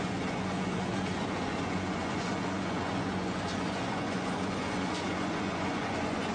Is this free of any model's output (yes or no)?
no